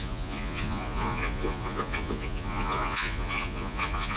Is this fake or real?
fake